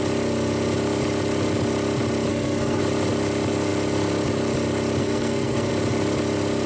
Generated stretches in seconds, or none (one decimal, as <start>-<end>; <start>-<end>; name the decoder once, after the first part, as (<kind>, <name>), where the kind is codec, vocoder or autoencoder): 2.3-2.8 (codec, SNAC); 5.0-5.7